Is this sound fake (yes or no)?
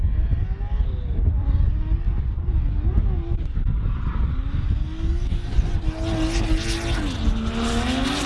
no